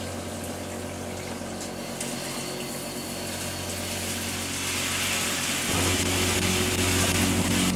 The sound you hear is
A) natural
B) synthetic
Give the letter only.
A